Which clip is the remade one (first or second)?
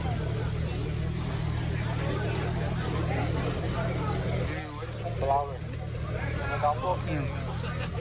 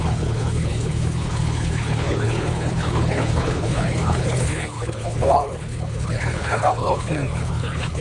second